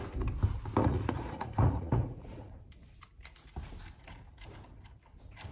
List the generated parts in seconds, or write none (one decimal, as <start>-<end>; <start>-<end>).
0.8-2.6